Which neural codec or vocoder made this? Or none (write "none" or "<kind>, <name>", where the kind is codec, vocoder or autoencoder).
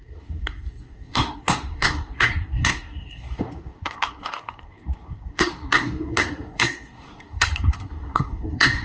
codec, SNAC